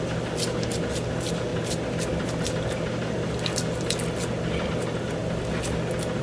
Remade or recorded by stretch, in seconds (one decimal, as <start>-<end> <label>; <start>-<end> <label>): 0.0-6.2 recorded